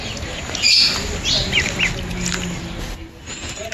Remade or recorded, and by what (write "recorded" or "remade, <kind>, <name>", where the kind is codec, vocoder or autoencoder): recorded